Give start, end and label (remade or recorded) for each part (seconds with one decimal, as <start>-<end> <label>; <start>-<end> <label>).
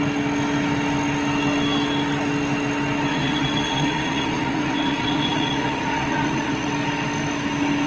0.0-3.1 recorded; 3.1-6.7 remade; 6.7-7.9 recorded